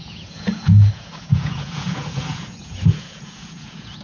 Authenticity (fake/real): fake